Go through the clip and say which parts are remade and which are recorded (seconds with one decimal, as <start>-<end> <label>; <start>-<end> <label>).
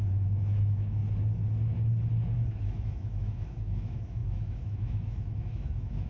0.0-1.0 remade; 1.0-2.5 recorded; 2.5-6.1 remade